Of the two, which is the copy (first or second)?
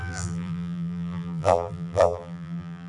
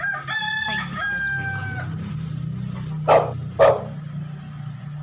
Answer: first